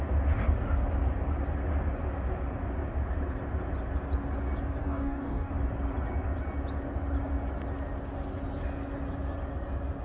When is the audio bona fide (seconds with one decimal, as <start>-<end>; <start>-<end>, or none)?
0.0-4.8; 5.5-10.0